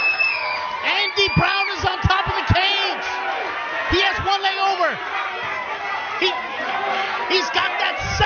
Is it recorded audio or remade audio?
recorded